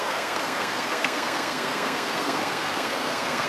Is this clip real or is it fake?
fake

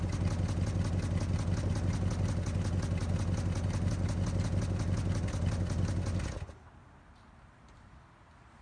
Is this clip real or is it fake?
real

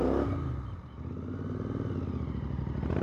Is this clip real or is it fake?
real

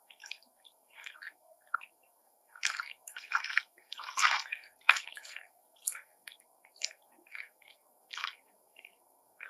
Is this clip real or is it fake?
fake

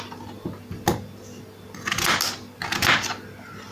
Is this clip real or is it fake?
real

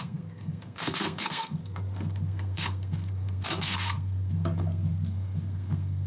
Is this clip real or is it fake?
fake